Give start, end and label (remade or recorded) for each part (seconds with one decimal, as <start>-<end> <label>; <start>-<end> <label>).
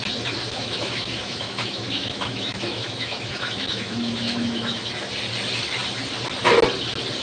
0.0-0.5 recorded; 0.5-4.8 remade; 4.8-7.2 recorded